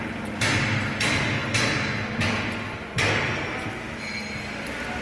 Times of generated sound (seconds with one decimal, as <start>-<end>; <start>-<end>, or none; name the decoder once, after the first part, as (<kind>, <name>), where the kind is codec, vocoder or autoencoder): none